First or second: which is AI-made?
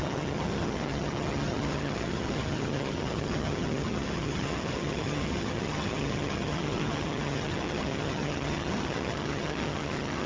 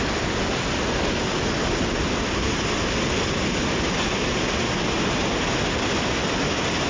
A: first